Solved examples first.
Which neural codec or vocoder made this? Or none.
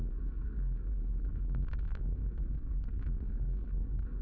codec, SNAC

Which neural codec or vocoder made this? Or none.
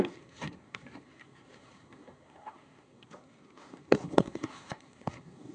codec, SNAC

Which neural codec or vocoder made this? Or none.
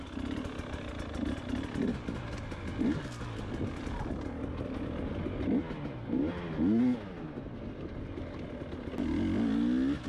none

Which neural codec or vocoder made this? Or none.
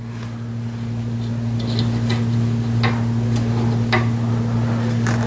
none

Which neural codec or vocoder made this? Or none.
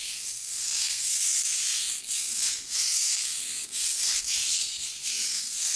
codec, SNAC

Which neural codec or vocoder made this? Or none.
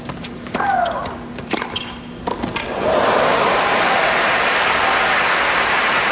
none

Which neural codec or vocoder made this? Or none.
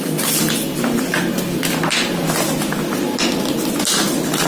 none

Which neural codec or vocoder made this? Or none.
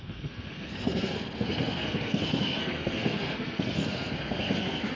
codec, SNAC